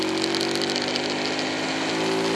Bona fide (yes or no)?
yes